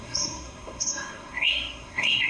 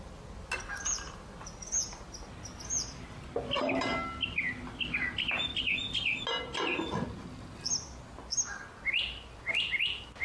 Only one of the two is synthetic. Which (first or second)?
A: first